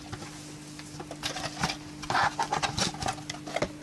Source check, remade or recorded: recorded